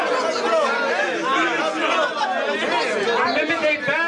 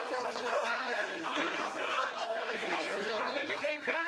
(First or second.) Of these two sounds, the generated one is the second